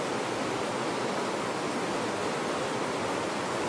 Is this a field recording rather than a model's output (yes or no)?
yes